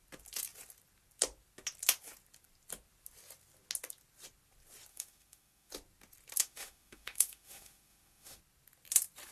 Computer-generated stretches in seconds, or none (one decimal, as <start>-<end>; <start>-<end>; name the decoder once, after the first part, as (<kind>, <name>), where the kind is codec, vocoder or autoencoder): 4.9-5.7 (autoencoder, DAC-VAE); 6.4-8.4